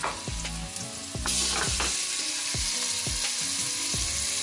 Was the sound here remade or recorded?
recorded